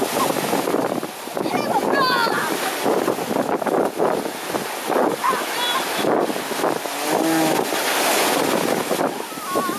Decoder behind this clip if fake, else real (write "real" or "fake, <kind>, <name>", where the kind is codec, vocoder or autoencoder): real